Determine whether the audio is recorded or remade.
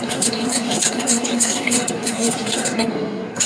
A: remade